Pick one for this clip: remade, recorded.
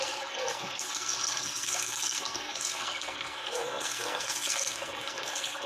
remade